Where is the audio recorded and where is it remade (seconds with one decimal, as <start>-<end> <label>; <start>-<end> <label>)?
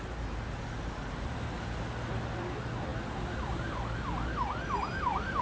0.0-5.4 recorded